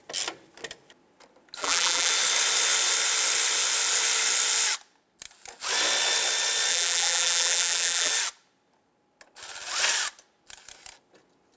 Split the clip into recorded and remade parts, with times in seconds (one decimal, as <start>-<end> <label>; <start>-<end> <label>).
0.0-1.6 recorded; 1.6-2.1 remade; 2.1-6.7 recorded; 6.7-8.1 remade; 8.1-11.6 recorded